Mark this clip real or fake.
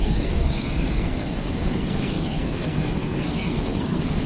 fake